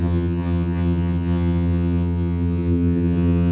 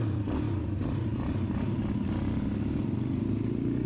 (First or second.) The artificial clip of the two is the first